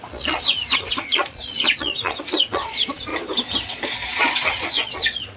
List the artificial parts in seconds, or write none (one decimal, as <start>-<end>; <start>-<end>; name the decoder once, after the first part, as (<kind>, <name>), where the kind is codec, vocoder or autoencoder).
0.0-3.1 (vocoder, Vocos); 3.7-5.4

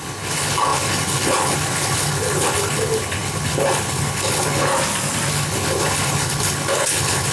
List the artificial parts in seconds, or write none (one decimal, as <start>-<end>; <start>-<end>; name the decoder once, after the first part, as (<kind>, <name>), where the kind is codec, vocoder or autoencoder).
0.0-4.7 (codec, HILCodec); 5.3-7.3

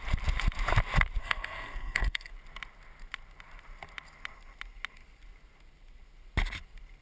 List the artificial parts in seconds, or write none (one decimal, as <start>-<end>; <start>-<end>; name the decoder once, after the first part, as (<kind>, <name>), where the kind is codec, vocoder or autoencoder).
1.2-2.3 (codec, SNAC)

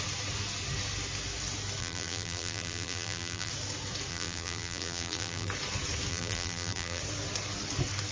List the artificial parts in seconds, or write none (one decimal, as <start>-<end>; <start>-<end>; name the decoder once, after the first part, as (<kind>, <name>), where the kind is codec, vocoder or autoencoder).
1.8-3.5 (vocoder, BigVGAN v2); 4.1-5.5; 6.1-7.0

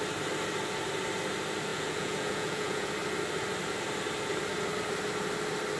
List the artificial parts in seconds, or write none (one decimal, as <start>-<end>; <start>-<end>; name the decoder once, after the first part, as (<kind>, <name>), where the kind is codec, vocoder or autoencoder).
1.7-2.9 (vocoder, Vocos)

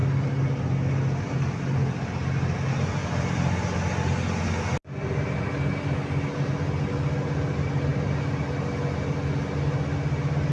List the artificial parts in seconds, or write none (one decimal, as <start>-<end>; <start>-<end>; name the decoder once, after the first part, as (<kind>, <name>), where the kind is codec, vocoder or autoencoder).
none